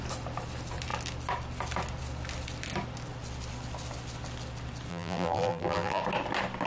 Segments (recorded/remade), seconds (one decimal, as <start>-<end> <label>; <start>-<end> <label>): 0.0-4.9 recorded; 4.9-6.0 remade; 6.0-6.7 recorded